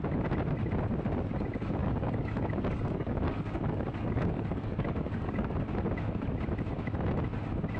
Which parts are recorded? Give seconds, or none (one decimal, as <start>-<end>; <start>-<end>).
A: 0.0-1.8; 5.6-7.8